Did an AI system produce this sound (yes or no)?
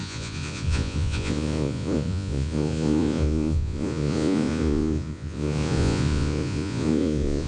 yes